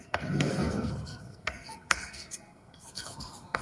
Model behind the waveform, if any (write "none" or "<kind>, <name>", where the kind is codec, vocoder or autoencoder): codec, SNAC